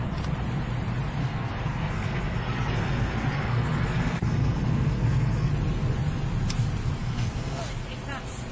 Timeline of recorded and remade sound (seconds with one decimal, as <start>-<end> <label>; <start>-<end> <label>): 0.0-1.2 recorded; 1.2-5.5 remade; 5.5-7.0 recorded; 7.0-7.6 remade; 7.6-8.5 recorded